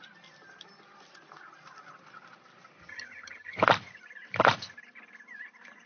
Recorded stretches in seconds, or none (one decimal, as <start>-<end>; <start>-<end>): 0.0-2.8; 3.6-5.9